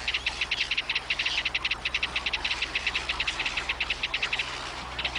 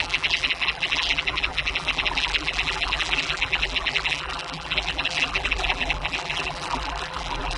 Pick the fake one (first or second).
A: second